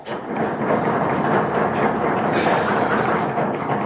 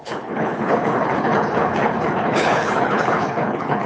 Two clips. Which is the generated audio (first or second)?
second